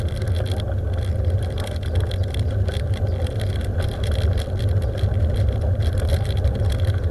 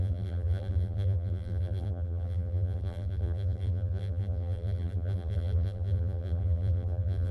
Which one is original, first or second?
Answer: first